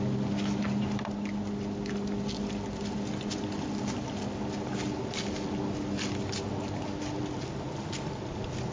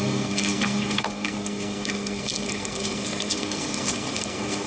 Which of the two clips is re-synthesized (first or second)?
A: second